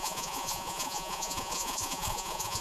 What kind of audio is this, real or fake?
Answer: fake